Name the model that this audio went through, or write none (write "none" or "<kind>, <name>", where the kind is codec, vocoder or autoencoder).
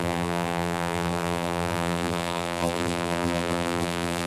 vocoder, BigVGAN v2